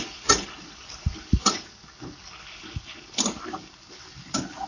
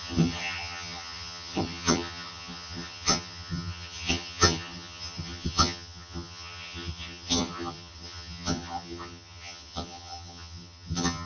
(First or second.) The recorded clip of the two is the first